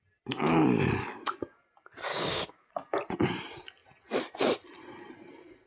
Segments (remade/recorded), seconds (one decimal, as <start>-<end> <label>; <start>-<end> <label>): 0.0-2.1 recorded; 2.1-2.7 remade; 2.7-5.7 recorded